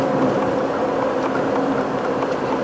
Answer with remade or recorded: recorded